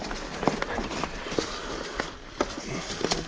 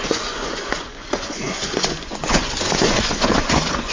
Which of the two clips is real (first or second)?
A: first